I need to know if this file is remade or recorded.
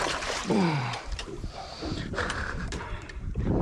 remade